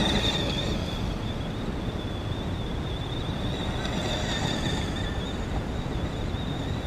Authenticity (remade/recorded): recorded